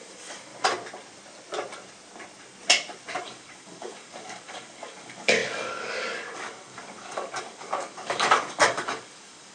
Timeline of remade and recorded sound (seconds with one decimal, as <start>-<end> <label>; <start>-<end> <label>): 0.0-0.5 remade; 0.5-3.2 recorded; 3.2-9.5 remade